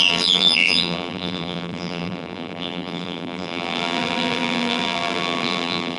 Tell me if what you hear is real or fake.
fake